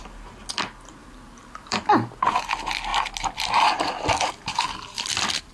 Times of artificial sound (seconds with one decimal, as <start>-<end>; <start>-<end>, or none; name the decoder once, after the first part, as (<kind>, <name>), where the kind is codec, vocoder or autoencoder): 1.0-1.8 (vocoder, BigVGAN v2)